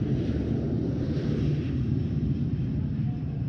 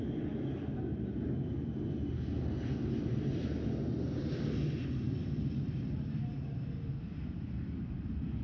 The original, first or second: second